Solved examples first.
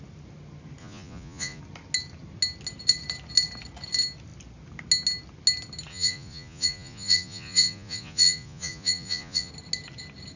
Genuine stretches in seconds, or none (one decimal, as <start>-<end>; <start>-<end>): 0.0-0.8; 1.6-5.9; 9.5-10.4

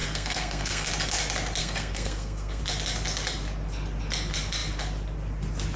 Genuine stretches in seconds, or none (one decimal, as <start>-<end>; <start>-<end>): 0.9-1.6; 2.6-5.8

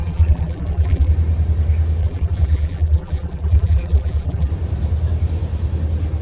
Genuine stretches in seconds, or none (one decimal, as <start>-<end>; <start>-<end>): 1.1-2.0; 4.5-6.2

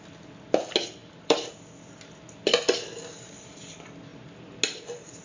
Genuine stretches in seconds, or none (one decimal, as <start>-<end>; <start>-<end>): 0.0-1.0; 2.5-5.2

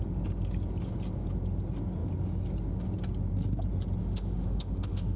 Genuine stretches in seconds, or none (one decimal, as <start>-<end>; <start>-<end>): 0.0-4.0

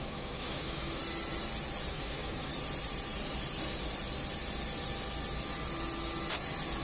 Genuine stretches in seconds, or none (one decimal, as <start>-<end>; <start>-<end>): 1.0-1.9; 2.5-6.8

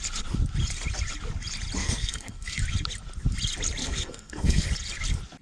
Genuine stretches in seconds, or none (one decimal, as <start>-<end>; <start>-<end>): 0.0-1.8; 2.6-3.8; 4.7-5.4